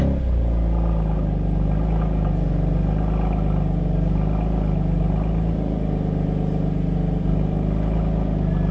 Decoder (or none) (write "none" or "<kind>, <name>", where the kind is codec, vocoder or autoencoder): none